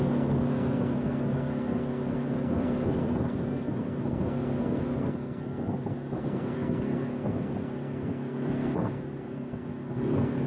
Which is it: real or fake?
fake